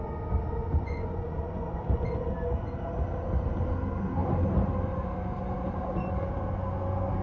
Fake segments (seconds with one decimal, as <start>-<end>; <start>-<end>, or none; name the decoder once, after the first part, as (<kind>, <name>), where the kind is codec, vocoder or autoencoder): 0.6-1.8 (vocoder, Vocos)